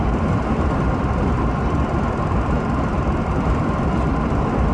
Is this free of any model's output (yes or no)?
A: no